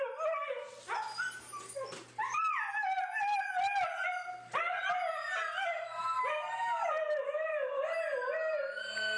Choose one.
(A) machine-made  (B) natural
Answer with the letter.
B